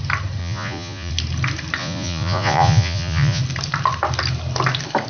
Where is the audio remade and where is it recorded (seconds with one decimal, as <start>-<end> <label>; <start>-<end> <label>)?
0.0-0.4 recorded; 0.4-1.1 remade; 1.1-1.8 recorded; 1.8-3.4 remade; 3.4-5.1 recorded